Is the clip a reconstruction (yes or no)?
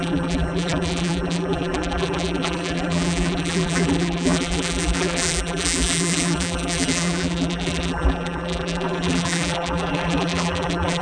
yes